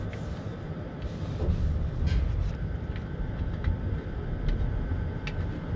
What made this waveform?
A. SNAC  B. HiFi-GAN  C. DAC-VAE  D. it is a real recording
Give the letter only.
D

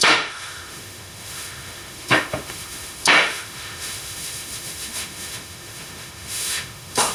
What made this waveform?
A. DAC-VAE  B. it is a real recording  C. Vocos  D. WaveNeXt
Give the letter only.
A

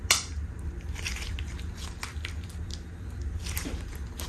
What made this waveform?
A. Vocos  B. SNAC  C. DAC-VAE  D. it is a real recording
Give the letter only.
D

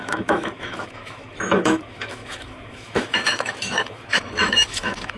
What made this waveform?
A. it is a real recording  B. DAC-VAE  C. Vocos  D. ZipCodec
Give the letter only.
B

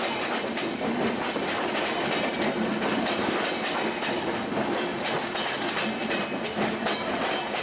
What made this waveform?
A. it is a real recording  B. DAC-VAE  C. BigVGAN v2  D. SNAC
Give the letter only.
A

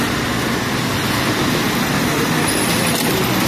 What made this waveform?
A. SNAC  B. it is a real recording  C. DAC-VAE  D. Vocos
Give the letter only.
B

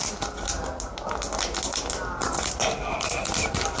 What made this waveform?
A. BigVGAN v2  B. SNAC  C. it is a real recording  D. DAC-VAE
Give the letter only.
C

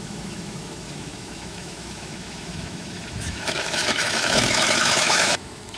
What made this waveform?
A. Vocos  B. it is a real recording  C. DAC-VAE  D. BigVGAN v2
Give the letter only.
C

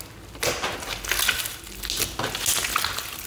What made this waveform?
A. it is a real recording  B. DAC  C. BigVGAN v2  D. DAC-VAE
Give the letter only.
A